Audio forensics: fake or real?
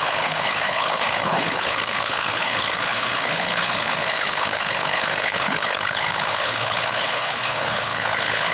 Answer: fake